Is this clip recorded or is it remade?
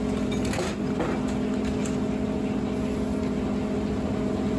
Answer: recorded